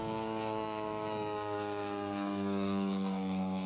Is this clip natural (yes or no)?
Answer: no